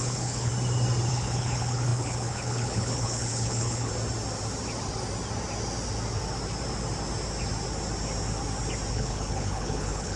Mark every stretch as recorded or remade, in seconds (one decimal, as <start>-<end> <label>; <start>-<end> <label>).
0.0-0.5 remade; 0.5-1.1 recorded; 1.1-3.9 remade; 3.9-8.9 recorded; 8.9-10.2 remade